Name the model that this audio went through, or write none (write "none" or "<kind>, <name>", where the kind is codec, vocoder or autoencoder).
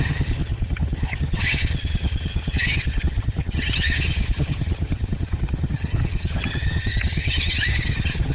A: vocoder, HiFi-GAN